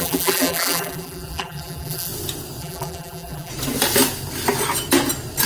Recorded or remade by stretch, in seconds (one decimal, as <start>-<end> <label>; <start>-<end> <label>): 0.0-2.1 remade; 2.1-2.6 recorded; 2.6-3.5 remade; 3.5-5.5 recorded